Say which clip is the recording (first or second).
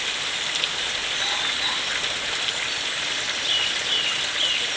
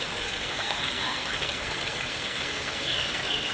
first